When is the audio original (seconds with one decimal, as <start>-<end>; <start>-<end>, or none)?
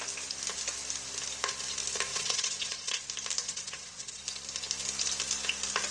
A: 0.0-2.1; 3.0-3.4; 4.2-5.9